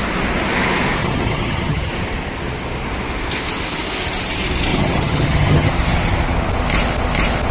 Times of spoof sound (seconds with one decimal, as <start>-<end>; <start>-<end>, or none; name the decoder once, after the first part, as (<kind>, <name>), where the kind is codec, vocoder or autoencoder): 1.0-1.9 (vocoder, HiFi-GAN); 4.7-5.7